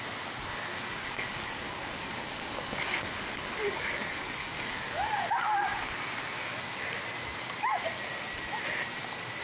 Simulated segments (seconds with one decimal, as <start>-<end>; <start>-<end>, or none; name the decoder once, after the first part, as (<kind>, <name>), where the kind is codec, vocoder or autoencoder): 0.9-5.0 (codec, DAC)